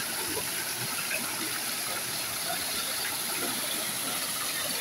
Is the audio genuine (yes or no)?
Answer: no